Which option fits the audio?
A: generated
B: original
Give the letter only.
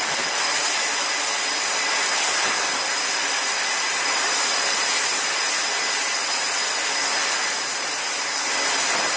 B